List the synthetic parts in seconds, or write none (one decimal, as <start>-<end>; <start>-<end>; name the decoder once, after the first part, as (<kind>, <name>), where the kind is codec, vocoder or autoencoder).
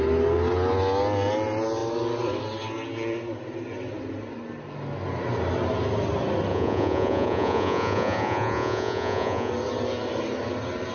6.5-9.5 (vocoder, Vocos)